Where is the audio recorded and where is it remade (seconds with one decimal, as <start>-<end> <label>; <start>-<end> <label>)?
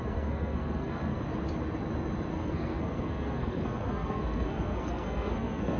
0.0-1.2 remade; 1.2-2.3 recorded; 2.3-5.8 remade